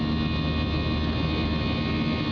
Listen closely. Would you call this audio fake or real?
real